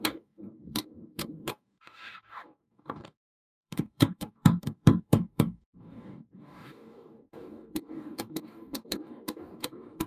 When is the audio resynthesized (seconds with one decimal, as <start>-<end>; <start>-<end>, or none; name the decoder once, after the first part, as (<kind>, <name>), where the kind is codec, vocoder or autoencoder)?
0.0-10.1 (codec, DAC)